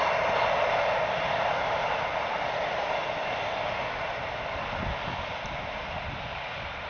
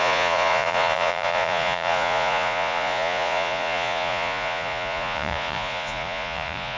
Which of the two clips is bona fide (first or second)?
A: first